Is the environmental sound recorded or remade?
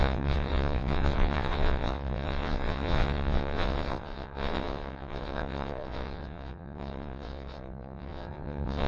remade